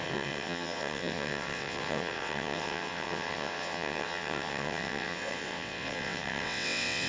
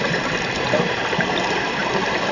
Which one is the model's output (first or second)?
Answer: first